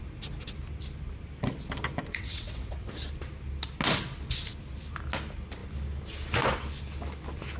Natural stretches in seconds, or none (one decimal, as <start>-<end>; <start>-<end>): 0.0-2.1; 2.9-7.6

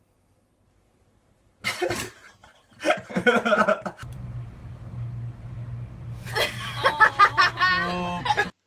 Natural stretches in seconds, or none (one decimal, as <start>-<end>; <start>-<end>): 2.4-3.1; 4.6-8.2